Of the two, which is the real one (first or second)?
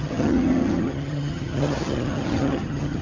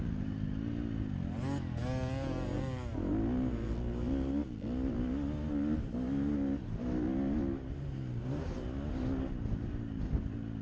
second